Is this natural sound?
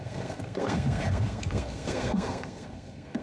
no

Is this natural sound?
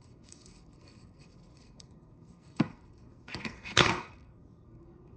no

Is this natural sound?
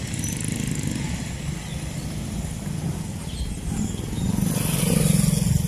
yes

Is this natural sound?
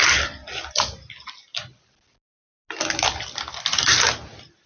yes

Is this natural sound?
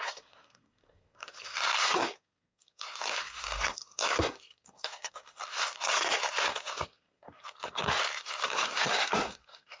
no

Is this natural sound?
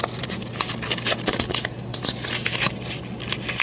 yes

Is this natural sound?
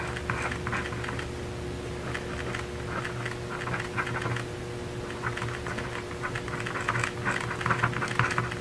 yes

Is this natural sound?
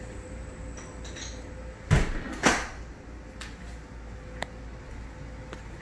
yes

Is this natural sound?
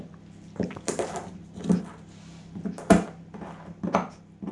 yes